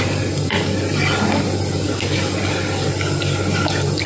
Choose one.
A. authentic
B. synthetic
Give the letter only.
A